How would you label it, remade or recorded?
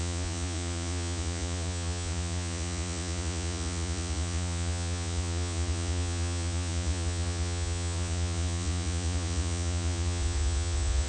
remade